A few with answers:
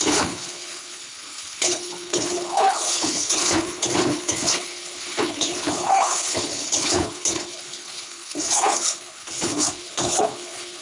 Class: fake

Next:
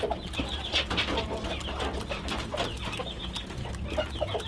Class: real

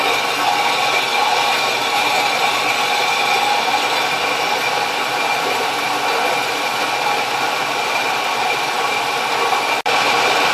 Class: real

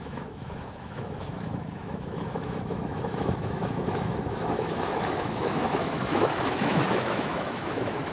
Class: fake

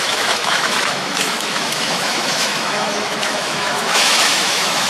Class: fake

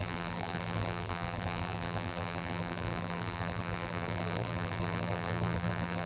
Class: fake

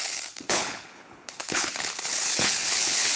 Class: fake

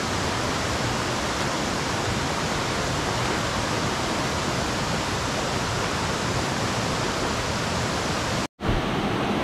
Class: real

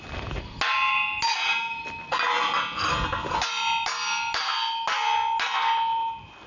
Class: real